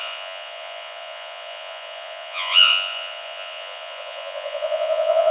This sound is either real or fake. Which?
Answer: fake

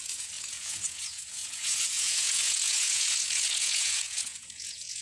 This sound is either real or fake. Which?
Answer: fake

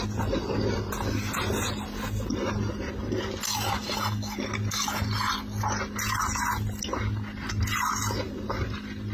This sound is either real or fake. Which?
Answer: real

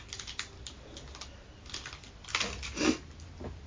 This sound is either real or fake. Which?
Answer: real